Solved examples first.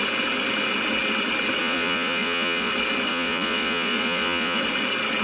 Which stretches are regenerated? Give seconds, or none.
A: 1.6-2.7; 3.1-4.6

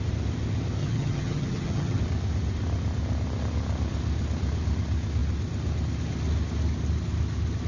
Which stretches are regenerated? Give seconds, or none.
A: 0.8-2.0